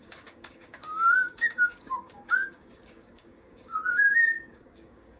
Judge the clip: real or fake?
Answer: fake